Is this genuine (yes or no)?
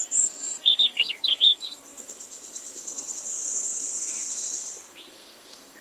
no